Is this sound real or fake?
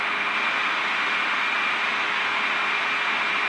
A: real